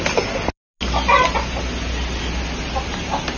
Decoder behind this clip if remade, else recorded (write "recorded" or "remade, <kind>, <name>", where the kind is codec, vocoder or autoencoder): recorded